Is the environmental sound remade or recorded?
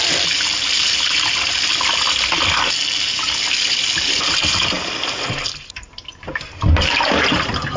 recorded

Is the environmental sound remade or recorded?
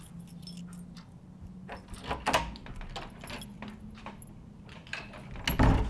recorded